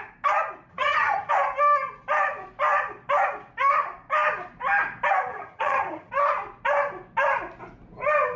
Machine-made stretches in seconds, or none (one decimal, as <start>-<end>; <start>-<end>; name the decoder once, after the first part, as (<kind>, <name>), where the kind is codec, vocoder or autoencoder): 0.7-1.3 (vocoder, HiFi-GAN); 5.3-6.1